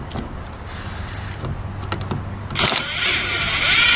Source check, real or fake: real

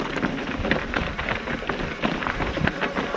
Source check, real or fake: real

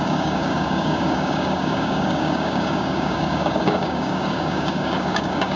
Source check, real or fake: fake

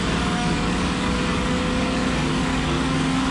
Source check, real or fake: fake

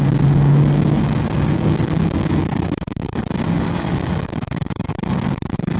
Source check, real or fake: fake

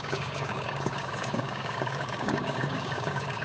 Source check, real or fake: fake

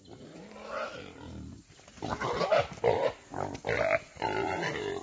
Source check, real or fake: real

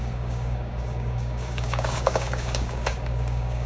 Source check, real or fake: fake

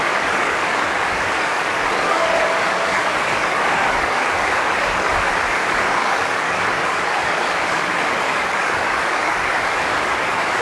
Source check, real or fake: fake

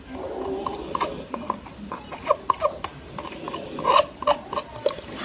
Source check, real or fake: real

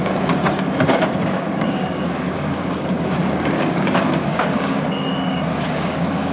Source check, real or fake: fake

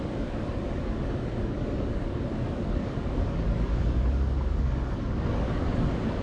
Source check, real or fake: fake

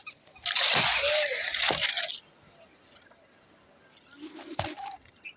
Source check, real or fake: real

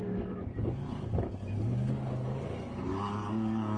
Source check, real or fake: fake